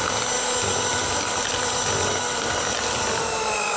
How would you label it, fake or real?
real